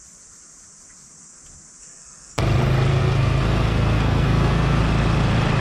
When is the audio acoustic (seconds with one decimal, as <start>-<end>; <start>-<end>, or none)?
0.0-1.8; 2.4-2.9; 4.8-5.6